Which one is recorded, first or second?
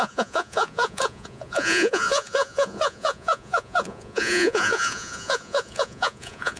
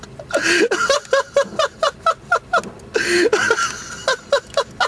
second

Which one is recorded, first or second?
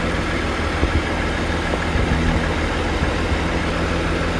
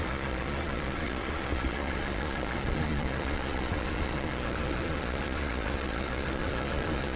first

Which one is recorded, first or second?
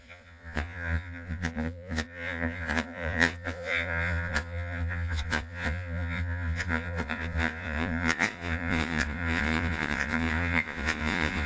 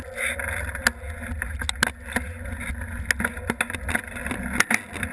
second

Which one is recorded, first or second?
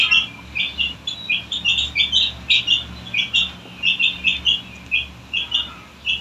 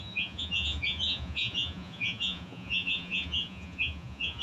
first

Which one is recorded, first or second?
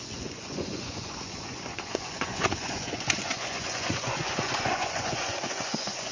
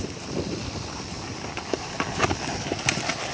second